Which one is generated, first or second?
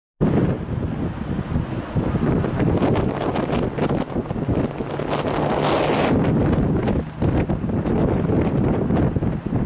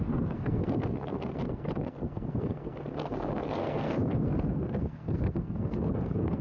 second